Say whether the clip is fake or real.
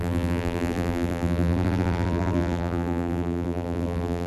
fake